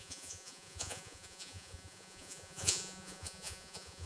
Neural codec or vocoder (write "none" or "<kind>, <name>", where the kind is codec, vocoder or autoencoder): vocoder, Vocos